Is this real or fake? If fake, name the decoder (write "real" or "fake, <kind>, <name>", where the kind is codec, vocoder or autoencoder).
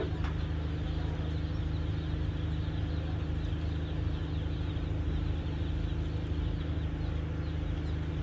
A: real